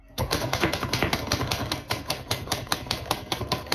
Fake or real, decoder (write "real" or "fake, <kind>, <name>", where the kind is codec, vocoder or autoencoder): fake, codec, SNAC